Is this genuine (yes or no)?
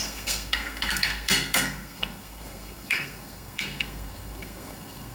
no